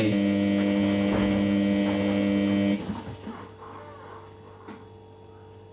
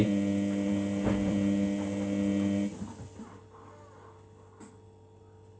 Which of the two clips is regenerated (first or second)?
second